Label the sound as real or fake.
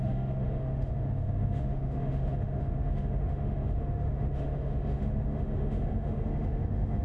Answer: fake